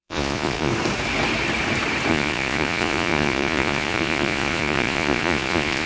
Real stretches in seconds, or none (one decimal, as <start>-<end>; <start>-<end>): 0.7-2.1